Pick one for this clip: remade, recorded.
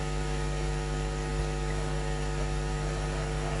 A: remade